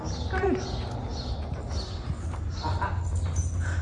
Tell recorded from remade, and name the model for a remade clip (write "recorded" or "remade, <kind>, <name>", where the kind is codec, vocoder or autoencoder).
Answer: recorded